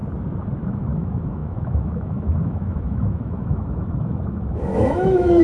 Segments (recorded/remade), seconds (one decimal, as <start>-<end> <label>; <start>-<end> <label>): 0.0-0.6 recorded; 0.6-5.4 remade